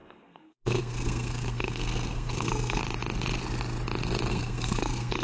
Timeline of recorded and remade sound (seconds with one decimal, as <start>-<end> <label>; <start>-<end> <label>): 0.0-2.8 remade; 2.8-4.3 recorded; 4.3-5.2 remade